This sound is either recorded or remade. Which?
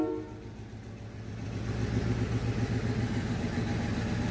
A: recorded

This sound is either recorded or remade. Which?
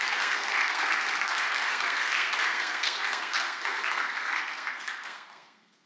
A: remade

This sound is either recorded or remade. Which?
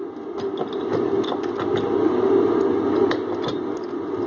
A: recorded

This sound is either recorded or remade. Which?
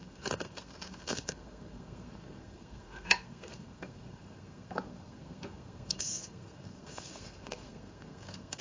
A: remade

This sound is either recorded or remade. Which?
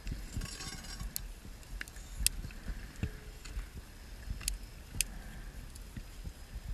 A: recorded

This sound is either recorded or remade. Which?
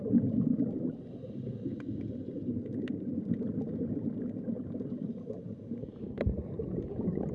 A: recorded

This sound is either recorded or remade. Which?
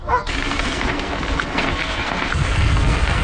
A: remade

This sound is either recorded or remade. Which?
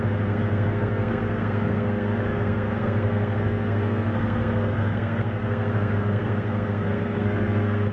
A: remade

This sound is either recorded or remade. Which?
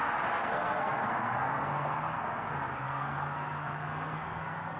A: remade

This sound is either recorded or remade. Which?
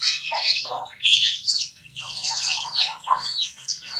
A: remade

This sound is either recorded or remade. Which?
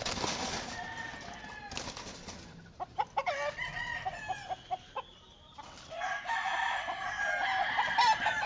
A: recorded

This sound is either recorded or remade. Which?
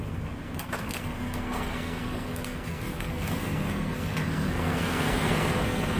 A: remade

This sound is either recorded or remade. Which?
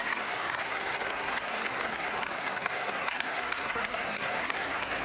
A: remade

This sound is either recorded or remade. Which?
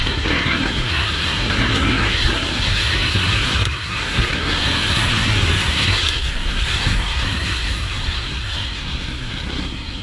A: remade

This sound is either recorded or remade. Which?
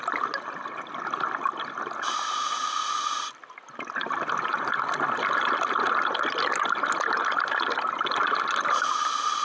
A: recorded